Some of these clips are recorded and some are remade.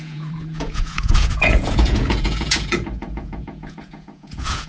remade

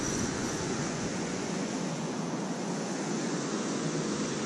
remade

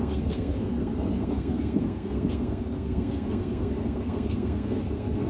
remade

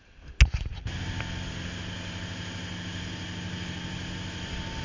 recorded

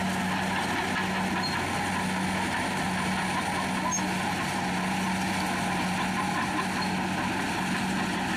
recorded